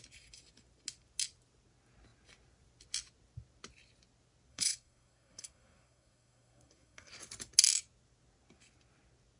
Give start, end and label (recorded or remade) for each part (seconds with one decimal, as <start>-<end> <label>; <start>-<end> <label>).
0.0-4.5 recorded; 4.5-7.1 remade; 7.1-9.4 recorded